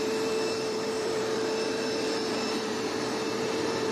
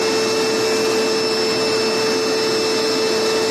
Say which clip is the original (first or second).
second